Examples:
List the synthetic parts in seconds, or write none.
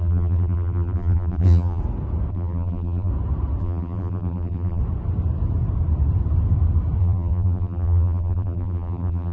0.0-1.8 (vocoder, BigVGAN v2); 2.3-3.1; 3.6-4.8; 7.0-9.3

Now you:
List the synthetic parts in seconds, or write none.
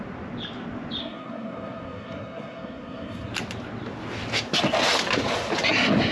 1.0-3.3 (codec, SNAC)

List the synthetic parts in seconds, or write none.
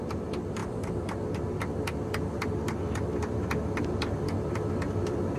none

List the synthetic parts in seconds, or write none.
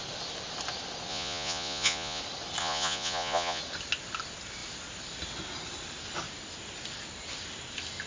1.1-2.2 (vocoder, Vocos); 2.6-3.6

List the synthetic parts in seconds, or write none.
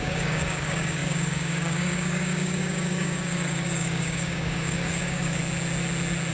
0.0-5.4 (codec, DAC)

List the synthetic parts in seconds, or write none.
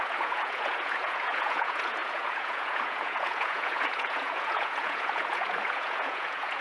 0.0-6.6 (vocoder, Vocos)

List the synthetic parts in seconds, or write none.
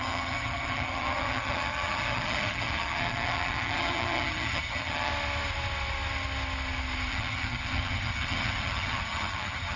0.0-5.1 (vocoder, HiFi-GAN); 7.1-9.8